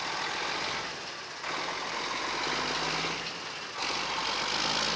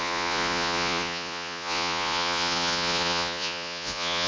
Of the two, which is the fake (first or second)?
second